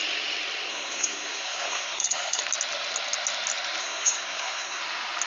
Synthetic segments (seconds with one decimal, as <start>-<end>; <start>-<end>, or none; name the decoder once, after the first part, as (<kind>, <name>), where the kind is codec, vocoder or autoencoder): 0.7-2.4 (codec, SNAC); 3.8-4.8